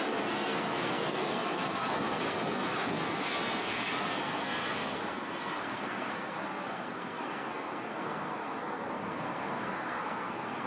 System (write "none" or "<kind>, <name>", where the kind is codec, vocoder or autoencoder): codec, SNAC